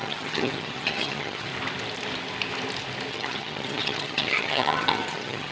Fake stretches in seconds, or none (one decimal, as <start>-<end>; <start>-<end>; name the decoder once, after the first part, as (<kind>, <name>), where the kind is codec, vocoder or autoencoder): 0.0-1.5 (vocoder, HiFi-GAN); 3.1-5.5